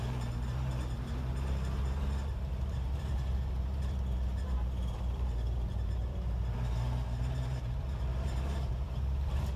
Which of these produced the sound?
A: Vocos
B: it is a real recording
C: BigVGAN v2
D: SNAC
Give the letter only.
C